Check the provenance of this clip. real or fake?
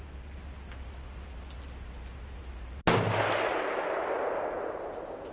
real